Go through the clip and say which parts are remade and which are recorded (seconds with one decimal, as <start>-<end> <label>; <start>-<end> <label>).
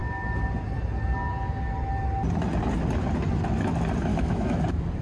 0.0-4.1 recorded; 4.1-4.6 remade; 4.6-5.0 recorded